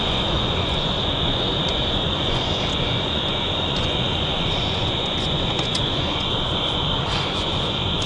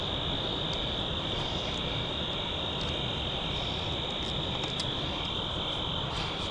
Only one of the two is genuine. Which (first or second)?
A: second